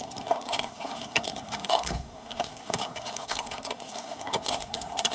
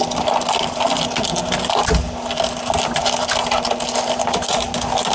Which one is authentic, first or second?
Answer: second